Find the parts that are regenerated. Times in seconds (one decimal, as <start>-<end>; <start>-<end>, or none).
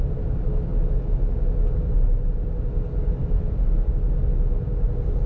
none